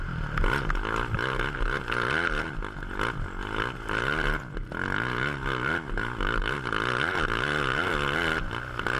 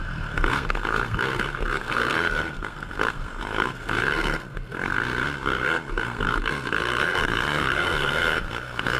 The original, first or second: first